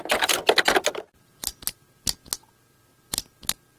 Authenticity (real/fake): real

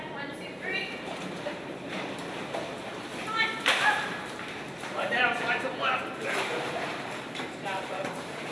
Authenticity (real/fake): fake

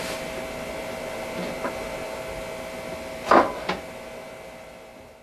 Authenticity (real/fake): real